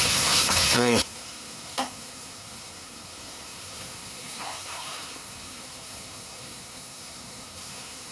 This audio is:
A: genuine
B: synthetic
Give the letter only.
B